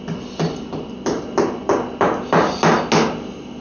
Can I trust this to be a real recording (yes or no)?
yes